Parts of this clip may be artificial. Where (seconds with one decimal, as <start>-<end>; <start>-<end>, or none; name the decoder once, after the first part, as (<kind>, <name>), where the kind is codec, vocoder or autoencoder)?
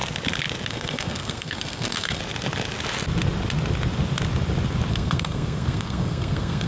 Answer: 0.7-2.2 (codec, SNAC); 4.9-6.7